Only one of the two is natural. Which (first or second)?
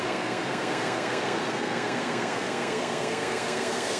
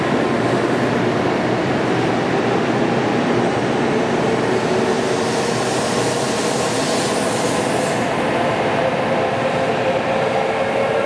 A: second